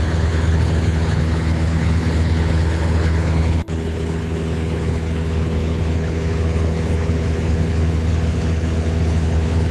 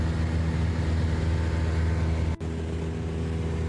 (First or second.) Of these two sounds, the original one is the second